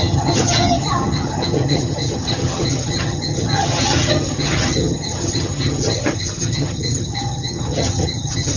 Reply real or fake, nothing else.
fake